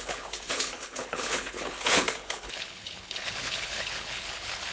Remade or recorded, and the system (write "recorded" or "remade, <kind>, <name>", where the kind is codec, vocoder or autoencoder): remade, codec, HILCodec